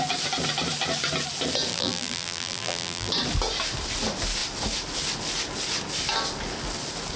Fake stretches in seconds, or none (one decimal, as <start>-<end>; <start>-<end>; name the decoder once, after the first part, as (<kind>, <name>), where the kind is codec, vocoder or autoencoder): 1.7-3.1 (vocoder, BigVGAN v2)